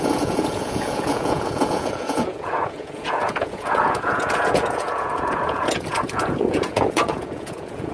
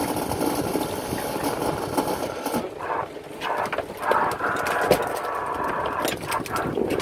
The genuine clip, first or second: second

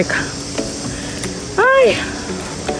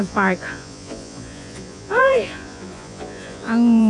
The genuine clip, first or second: first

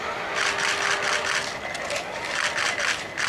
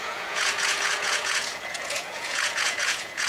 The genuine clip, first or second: first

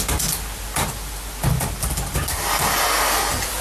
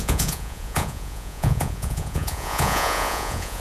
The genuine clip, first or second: first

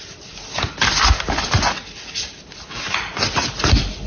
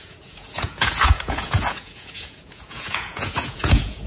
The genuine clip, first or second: first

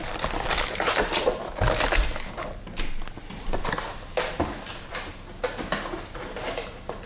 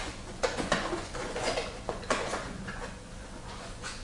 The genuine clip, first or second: first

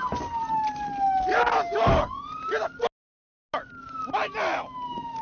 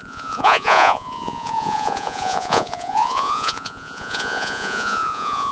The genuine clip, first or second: first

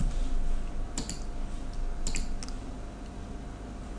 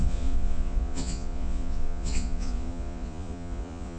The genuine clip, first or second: first